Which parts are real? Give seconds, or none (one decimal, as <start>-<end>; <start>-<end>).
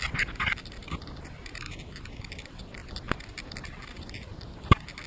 0.0-5.1